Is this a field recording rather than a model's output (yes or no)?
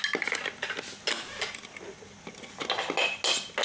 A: yes